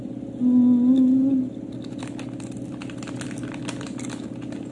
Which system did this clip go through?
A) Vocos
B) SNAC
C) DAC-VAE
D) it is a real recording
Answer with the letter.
D